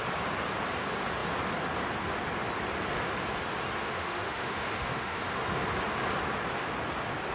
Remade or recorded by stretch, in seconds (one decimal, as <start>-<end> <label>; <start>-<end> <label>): 0.0-3.8 recorded; 3.8-5.2 remade; 5.2-7.3 recorded